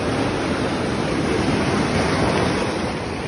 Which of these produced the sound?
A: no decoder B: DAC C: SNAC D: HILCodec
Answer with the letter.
A